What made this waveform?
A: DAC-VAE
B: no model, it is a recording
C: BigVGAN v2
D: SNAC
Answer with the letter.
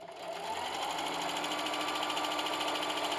B